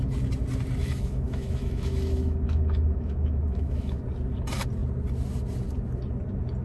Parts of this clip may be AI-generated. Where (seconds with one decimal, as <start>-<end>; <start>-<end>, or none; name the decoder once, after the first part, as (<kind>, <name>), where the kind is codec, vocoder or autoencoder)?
0.8-4.0 (autoencoder, DAC-VAE)